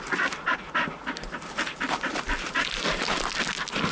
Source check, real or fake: real